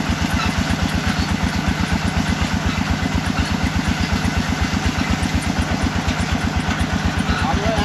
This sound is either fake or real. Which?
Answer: real